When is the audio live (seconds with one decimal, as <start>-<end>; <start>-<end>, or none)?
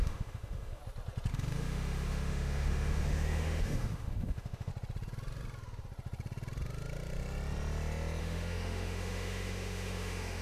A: 0.8-1.3; 4.7-8.2